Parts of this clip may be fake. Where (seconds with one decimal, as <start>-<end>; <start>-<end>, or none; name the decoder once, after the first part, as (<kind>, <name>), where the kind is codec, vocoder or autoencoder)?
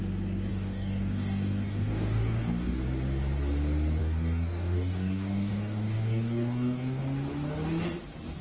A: 0.5-2.7 (codec, DAC); 4.0-7.0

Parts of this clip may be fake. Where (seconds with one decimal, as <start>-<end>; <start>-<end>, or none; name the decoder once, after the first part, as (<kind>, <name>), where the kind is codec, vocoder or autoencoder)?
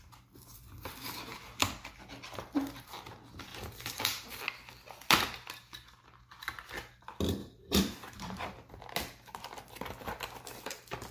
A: 3.5-4.3 (vocoder, BigVGAN v2); 7.4-8.7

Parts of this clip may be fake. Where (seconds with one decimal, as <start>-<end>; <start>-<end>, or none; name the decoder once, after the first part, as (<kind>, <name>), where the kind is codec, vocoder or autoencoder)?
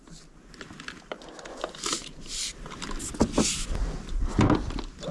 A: none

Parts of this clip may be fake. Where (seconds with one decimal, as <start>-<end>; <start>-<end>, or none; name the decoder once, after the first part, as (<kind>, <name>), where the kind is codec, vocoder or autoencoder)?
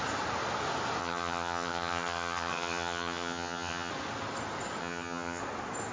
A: 1.0-3.9 (vocoder, HiFi-GAN); 4.8-5.4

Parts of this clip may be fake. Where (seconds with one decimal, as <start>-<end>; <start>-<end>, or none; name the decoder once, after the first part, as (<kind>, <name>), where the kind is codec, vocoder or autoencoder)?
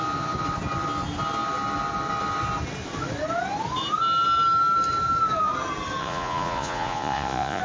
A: 6.0-7.6 (vocoder, Vocos)